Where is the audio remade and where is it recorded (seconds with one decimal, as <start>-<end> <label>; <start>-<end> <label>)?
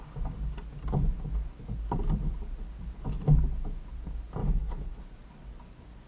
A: 0.0-4.4 recorded; 4.4-5.0 remade; 5.0-6.1 recorded